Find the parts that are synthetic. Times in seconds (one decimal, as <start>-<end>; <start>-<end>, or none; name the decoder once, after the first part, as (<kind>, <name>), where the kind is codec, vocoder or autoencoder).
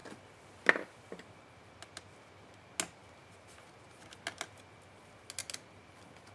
none